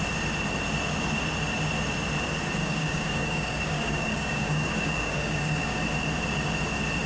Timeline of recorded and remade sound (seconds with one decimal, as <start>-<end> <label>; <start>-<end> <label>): 0.0-2.6 recorded; 2.6-5.8 remade; 5.8-7.1 recorded